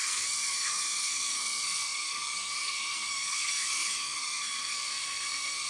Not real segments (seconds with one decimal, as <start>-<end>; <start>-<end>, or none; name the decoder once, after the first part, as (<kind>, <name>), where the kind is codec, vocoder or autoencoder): 0.0-5.7 (codec, SNAC)